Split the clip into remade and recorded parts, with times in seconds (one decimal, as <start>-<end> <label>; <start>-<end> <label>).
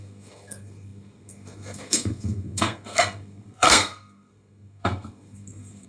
0.0-5.9 remade